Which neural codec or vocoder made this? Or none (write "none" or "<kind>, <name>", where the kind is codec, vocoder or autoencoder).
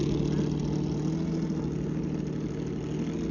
none